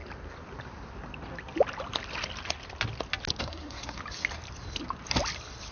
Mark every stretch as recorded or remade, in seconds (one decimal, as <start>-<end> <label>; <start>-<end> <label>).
0.0-3.4 recorded; 3.4-4.0 remade; 4.0-5.7 recorded